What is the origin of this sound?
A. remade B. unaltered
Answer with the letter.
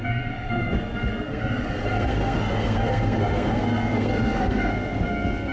A